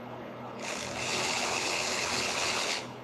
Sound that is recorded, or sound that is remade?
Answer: remade